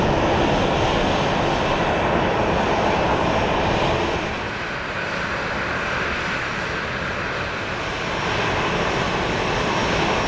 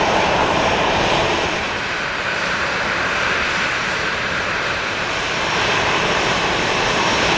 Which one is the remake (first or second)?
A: second